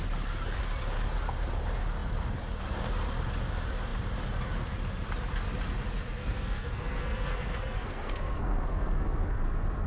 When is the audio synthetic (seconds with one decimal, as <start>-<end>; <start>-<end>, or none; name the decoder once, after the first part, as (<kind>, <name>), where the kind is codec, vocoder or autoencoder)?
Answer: 6.2-9.4 (codec, SNAC)